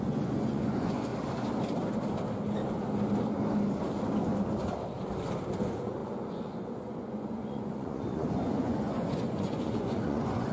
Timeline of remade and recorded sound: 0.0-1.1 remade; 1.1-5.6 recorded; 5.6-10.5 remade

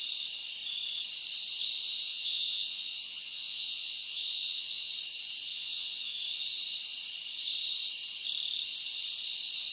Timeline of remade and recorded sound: 0.0-2.1 recorded; 2.1-4.9 remade; 4.9-5.5 recorded; 5.5-6.2 remade; 6.2-9.7 recorded

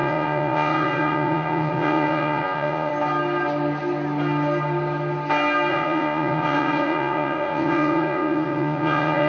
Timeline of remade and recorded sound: 0.0-2.9 remade; 2.9-5.7 recorded; 5.7-9.3 remade

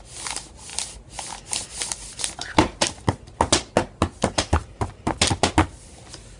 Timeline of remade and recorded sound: 0.0-6.4 recorded

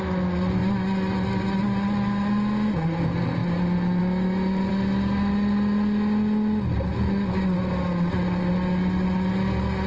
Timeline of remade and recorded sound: 0.0-9.9 recorded